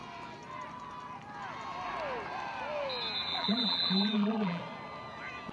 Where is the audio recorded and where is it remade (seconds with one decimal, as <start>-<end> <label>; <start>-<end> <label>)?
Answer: 0.0-3.3 recorded; 3.3-4.6 remade; 4.6-5.5 recorded